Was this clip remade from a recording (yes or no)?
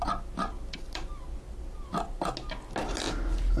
no